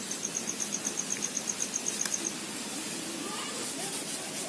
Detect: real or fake real